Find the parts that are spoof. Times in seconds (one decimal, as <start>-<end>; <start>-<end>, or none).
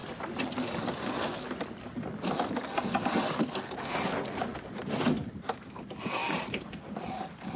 none